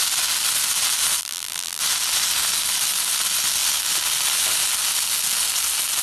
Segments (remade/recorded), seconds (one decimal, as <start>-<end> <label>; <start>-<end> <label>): 0.0-1.2 recorded; 1.2-1.8 remade; 1.8-6.0 recorded